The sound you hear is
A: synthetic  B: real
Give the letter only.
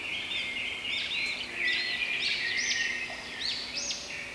B